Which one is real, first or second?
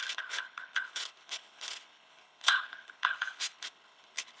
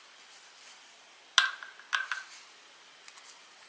second